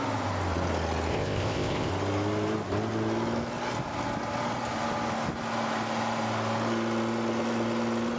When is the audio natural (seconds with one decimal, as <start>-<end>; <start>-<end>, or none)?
0.0-1.1; 1.9-8.2